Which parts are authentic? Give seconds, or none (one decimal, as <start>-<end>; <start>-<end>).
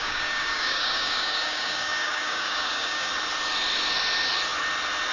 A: 3.1-5.1